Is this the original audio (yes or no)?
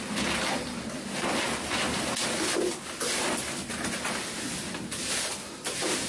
yes